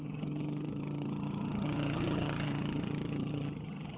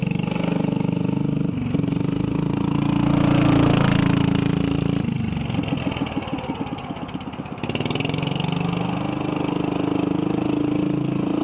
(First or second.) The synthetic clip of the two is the first